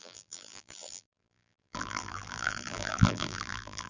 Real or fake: fake